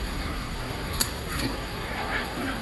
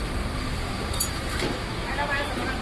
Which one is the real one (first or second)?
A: second